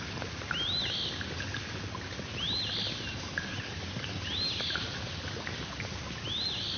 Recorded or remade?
recorded